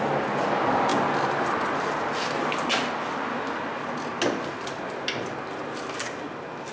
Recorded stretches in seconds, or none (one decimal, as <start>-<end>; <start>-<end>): 0.0-6.7